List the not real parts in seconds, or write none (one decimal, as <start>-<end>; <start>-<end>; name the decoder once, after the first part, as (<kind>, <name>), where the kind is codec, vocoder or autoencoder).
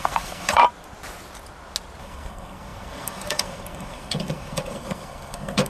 0.0-0.6 (codec, SNAC); 2.0-5.7